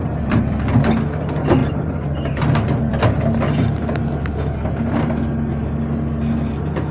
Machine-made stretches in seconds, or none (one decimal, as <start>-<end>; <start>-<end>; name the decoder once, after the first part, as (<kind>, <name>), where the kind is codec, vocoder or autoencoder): 0.0-0.8 (vocoder, BigVGAN v2); 1.6-3.1